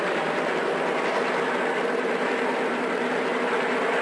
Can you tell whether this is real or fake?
real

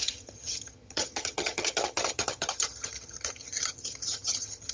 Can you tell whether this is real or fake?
fake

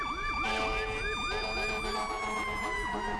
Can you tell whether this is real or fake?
real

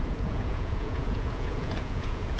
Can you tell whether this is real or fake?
fake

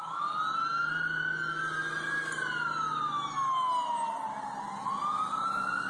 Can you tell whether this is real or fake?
real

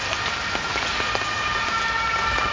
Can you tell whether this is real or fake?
real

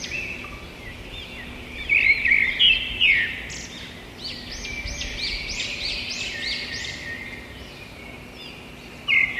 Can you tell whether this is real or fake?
real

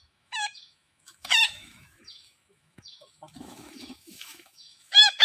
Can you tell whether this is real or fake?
fake